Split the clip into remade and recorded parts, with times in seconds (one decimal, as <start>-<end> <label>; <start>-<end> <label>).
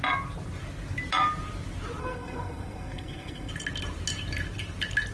0.0-2.0 recorded; 2.0-3.5 remade; 3.5-5.1 recorded